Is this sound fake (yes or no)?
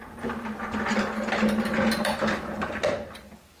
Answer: yes